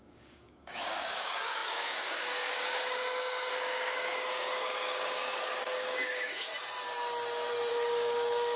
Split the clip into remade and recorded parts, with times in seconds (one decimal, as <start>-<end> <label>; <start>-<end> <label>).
0.0-6.5 remade; 6.5-7.7 recorded; 7.7-8.6 remade

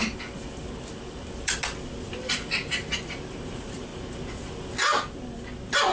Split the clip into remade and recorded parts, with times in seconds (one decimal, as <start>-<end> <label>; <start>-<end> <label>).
0.0-5.9 recorded

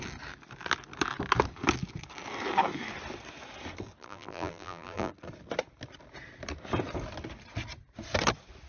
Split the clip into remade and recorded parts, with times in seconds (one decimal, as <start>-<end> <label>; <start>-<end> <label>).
0.0-4.0 recorded; 4.0-5.1 remade; 5.1-8.7 recorded

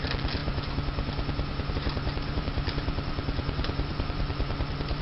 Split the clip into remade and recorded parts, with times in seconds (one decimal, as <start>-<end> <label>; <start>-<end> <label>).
0.0-0.4 remade; 0.4-1.7 recorded; 1.7-5.0 remade

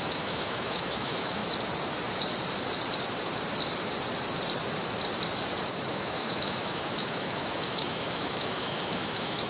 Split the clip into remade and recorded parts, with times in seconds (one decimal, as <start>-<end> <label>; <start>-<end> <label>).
0.0-1.4 remade; 1.4-5.9 recorded; 5.9-9.5 remade

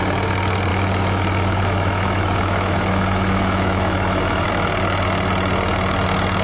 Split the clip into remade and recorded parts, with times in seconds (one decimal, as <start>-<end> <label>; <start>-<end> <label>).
0.0-0.7 recorded; 0.7-4.5 remade; 4.5-6.4 recorded